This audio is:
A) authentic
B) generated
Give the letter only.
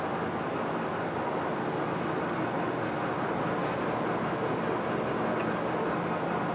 A